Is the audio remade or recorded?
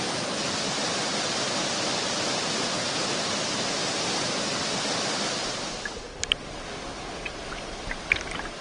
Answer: recorded